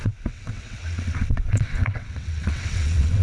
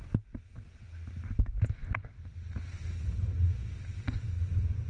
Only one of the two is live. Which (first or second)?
second